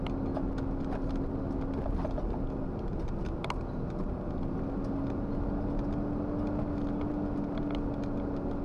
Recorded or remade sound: recorded